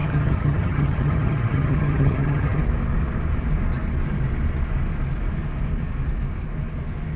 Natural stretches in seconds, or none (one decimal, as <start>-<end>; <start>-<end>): 2.6-7.2